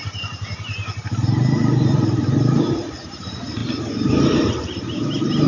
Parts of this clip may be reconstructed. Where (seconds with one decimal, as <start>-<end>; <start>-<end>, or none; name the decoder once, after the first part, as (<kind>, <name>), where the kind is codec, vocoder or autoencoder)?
0.0-5.5 (vocoder, BigVGAN v2)